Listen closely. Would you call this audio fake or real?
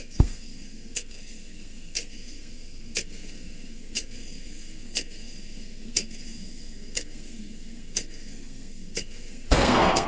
fake